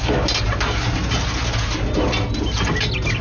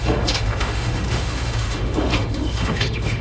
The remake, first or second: second